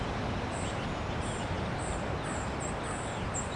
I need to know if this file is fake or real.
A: real